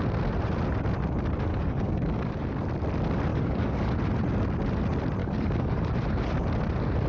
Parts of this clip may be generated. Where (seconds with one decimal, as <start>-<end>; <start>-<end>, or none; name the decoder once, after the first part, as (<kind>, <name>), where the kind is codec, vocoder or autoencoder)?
1.5-2.5 (codec, DAC); 3.3-3.9; 5.2-5.9

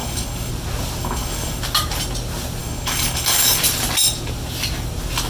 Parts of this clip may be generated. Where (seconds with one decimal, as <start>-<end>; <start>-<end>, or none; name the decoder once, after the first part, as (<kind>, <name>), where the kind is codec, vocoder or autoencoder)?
0.0-0.5 (codec, DAC); 1.0-1.6; 2.6-3.6

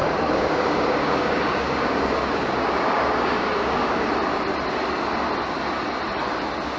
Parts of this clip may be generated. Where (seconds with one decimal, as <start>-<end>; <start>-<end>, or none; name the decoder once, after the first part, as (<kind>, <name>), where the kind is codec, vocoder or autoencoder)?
0.0-4.1 (codec, DAC)

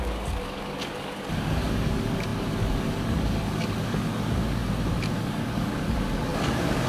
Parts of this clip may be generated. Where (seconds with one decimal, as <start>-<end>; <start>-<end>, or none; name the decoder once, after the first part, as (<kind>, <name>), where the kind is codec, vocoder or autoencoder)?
0.0-4.6 (codec, DAC); 5.2-6.9